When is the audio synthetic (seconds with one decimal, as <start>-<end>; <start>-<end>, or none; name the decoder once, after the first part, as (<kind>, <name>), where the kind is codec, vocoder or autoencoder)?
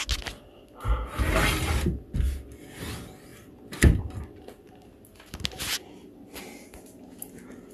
none